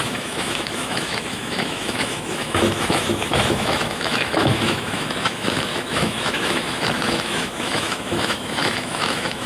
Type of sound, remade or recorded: remade